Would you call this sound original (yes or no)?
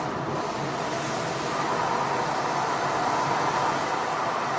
no